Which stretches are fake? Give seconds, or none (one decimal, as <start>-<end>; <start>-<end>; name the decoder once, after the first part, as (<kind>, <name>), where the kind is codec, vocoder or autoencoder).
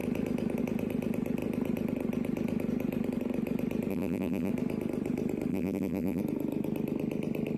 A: 3.9-4.5 (vocoder, BigVGAN v2); 5.5-6.2